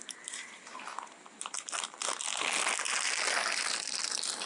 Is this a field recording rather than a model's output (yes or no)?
yes